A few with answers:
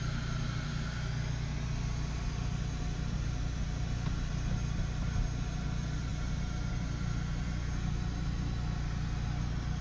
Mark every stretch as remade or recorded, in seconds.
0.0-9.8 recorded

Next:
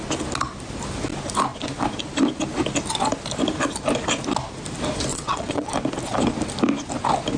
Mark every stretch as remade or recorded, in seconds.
0.0-5.1 recorded; 5.1-5.7 remade; 5.7-7.4 recorded